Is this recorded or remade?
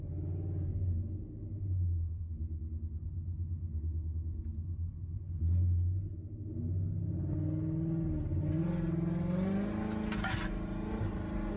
recorded